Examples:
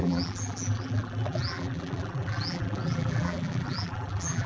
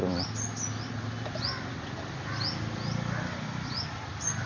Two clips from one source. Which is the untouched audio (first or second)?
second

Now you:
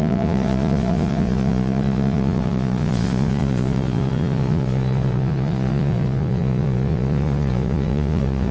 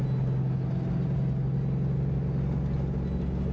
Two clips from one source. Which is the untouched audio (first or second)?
second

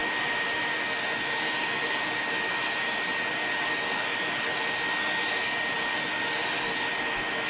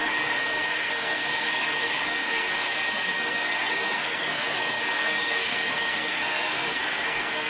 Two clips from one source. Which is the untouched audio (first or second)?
first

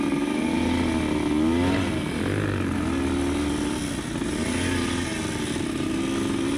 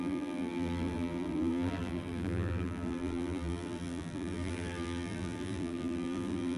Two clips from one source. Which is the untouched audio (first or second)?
first